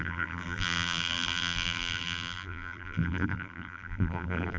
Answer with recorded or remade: remade